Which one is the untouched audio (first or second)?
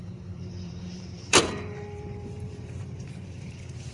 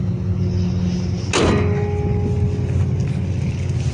second